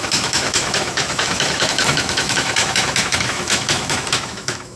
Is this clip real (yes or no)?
no